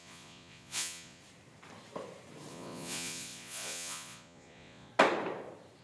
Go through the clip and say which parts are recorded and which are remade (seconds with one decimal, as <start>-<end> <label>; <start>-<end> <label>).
0.0-1.2 remade; 1.2-2.5 recorded; 2.5-4.9 remade; 4.9-5.8 recorded